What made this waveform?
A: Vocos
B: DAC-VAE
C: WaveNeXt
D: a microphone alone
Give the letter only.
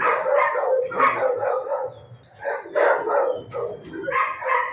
D